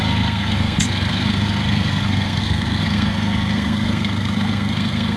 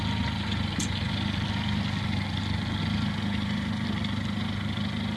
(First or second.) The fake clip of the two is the first